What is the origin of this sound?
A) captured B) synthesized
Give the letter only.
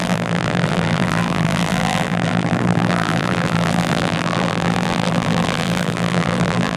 B